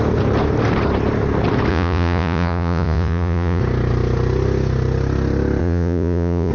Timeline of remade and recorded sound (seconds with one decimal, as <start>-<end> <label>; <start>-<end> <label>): 0.0-1.7 recorded; 1.7-3.6 remade; 3.6-5.6 recorded; 5.6-6.5 remade

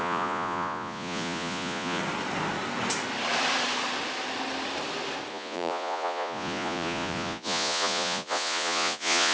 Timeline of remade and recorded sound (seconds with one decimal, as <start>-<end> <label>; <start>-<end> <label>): 0.0-2.0 remade; 2.0-5.3 recorded; 5.3-9.3 remade

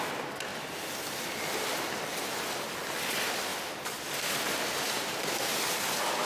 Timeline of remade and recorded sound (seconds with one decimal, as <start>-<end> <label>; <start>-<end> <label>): 0.0-6.3 recorded

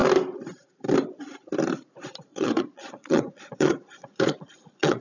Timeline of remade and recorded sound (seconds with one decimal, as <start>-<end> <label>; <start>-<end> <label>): 0.0-2.3 recorded; 2.3-5.0 remade

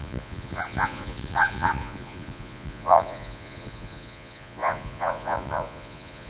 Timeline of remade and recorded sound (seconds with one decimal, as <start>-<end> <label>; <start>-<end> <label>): 0.0-6.3 remade

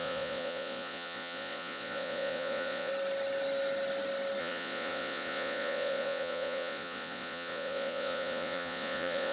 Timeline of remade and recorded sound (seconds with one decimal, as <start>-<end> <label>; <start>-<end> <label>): 0.0-2.9 remade; 2.9-4.4 recorded; 4.4-9.3 remade

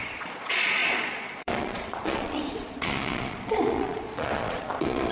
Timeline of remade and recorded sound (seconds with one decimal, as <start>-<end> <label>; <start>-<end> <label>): 0.0-5.1 remade

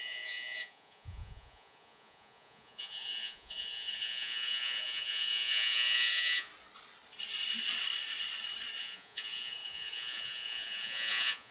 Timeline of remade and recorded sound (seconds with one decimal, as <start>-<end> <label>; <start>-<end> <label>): 0.0-6.5 remade; 6.5-8.8 recorded; 8.8-11.5 remade